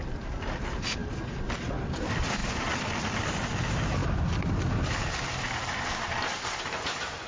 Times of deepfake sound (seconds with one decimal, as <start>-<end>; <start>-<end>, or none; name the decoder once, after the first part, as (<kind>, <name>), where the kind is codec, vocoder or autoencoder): none